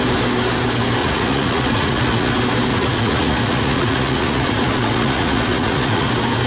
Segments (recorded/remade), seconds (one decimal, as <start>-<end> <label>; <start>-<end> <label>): 0.0-1.0 recorded; 1.0-2.3 remade; 2.3-2.7 recorded; 2.7-6.1 remade; 6.1-6.5 recorded